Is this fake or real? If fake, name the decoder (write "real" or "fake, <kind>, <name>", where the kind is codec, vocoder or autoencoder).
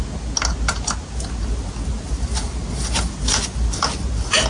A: real